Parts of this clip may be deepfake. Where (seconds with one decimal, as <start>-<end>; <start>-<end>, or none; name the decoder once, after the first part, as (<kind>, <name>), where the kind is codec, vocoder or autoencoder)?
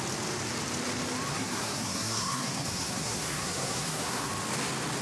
1.3-4.3 (codec, SNAC)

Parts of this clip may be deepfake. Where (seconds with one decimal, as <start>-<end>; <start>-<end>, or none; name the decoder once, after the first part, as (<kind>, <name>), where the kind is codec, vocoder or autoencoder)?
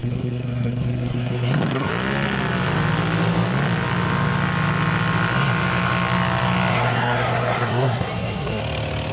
0.0-1.9 (codec, SNAC); 6.7-8.6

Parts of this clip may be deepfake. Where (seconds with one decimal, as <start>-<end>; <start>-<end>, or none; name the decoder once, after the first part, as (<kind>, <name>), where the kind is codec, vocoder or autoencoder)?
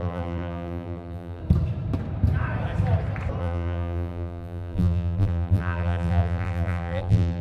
0.0-1.4 (vocoder, BigVGAN v2); 3.4-7.4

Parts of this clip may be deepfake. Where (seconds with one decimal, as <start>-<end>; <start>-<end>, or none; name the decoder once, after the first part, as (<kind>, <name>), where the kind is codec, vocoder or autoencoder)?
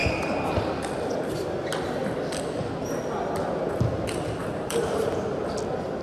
4.4-5.4 (vocoder, BigVGAN v2)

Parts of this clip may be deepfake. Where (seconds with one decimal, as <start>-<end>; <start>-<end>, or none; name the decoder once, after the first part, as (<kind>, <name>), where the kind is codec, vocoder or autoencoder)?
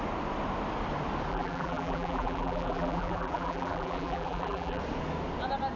1.3-4.8 (vocoder, BigVGAN v2)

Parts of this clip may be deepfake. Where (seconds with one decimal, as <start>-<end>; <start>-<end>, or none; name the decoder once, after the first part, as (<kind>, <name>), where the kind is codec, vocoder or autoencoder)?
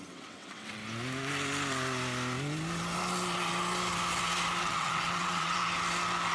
0.0-0.8 (vocoder, WaveNeXt); 4.6-5.6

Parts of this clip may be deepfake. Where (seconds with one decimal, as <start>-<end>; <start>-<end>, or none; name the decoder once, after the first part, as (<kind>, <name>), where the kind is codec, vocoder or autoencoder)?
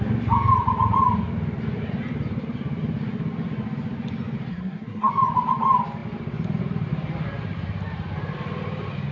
4.5-5.1 (codec, SNAC)